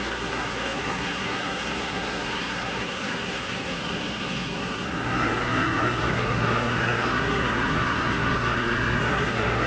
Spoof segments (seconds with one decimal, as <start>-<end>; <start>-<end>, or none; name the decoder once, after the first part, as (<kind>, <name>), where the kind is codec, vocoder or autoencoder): 0.0-9.7 (codec, SNAC)